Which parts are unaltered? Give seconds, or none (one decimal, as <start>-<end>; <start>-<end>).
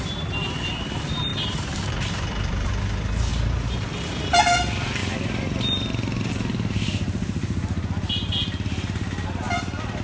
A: 0.0-1.3; 2.7-3.3; 4.4-10.0